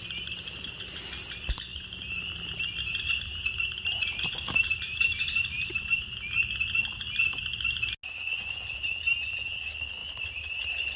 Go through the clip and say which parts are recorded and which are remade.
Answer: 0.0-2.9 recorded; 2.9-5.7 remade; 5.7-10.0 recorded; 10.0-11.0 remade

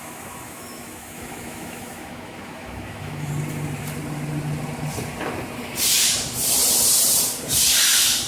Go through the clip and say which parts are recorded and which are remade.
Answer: 0.0-3.3 remade; 3.3-8.3 recorded

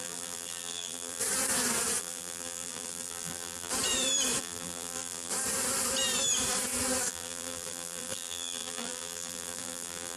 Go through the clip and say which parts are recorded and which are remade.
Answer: 0.0-1.2 remade; 1.2-2.0 recorded; 2.0-3.7 remade; 3.7-4.4 recorded; 4.4-5.3 remade; 5.3-7.1 recorded; 7.1-10.2 remade

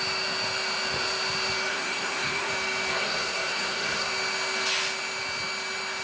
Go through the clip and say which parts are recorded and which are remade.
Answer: 0.0-1.7 recorded; 1.7-2.5 remade; 2.5-2.9 recorded; 2.9-4.1 remade; 4.1-6.0 recorded